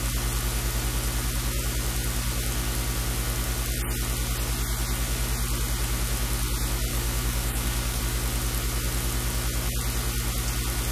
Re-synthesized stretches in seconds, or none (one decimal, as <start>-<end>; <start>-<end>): 6.9-8.0